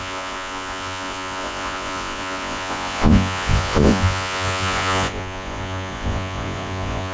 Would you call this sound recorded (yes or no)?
no